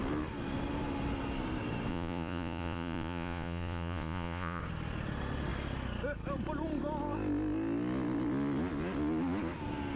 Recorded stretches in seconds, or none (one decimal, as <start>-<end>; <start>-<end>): 0.0-1.9; 4.6-10.0